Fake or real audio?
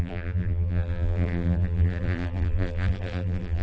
fake